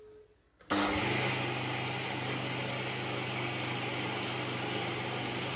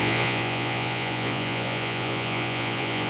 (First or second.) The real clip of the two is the first